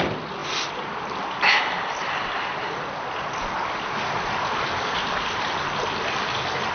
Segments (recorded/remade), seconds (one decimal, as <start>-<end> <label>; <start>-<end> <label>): 0.0-6.7 recorded